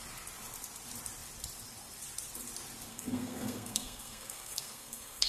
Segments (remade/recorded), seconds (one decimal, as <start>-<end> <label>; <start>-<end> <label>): 0.0-2.9 recorded; 2.9-5.3 remade

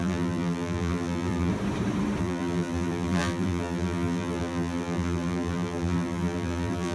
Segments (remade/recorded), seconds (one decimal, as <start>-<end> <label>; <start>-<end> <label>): 0.0-1.5 remade; 1.5-2.2 recorded; 2.2-6.9 remade

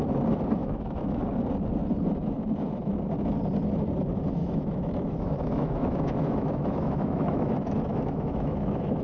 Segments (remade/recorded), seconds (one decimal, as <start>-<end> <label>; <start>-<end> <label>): 0.0-0.6 recorded; 0.6-1.2 remade; 1.2-4.4 recorded; 4.4-7.5 remade; 7.5-7.9 recorded; 7.9-9.0 remade

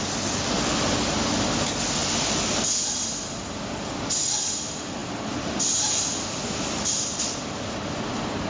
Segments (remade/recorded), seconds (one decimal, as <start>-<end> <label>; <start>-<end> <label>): 0.0-8.5 recorded

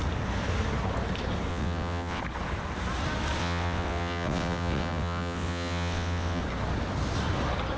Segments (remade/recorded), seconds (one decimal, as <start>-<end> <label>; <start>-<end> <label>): 0.0-1.5 recorded; 1.5-2.2 remade; 2.2-3.4 recorded; 3.4-6.4 remade; 6.4-7.8 recorded